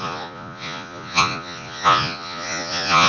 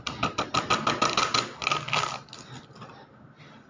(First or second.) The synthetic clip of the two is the first